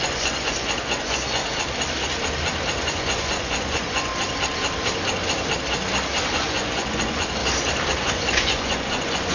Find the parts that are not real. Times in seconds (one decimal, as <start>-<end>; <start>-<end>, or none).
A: 0.0-1.4; 2.8-4.1; 6.3-7.4; 8.0-9.3

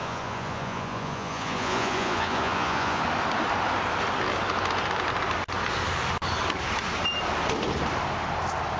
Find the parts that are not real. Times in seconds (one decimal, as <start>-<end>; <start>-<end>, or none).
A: 0.0-3.0

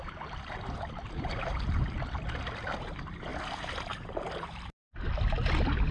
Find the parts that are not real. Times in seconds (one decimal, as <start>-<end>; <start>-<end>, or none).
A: none

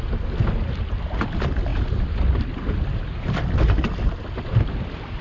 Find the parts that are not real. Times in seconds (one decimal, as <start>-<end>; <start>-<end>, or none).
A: none

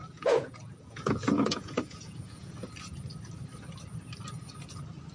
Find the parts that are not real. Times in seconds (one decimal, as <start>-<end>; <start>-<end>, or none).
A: 0.0-2.5

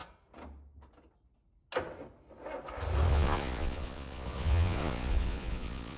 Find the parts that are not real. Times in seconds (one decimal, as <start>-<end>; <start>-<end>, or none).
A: 3.1-6.0